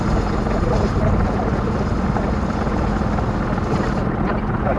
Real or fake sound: real